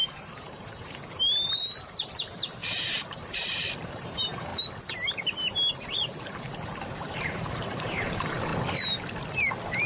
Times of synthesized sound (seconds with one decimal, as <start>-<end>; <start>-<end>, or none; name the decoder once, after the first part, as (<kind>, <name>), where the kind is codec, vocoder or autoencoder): 0.0-4.5 (vocoder, BigVGAN v2); 5.7-8.5